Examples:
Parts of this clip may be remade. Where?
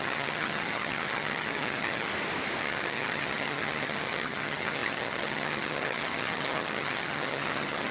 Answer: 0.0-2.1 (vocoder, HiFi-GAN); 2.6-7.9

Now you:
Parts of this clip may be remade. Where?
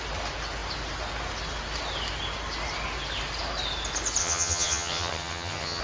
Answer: 4.2-5.8 (vocoder, HiFi-GAN)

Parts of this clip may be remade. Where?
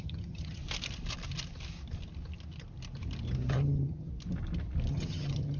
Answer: 0.0-0.6 (vocoder, HiFi-GAN); 3.5-4.1; 4.9-5.6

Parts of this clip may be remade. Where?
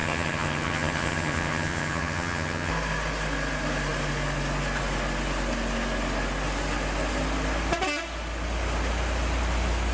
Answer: 0.0-2.7 (vocoder, HiFi-GAN)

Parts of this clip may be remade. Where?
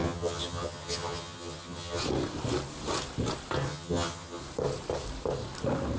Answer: 0.0-2.0 (vocoder, HiFi-GAN); 3.7-4.4